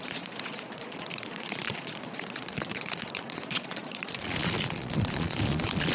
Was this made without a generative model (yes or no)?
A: no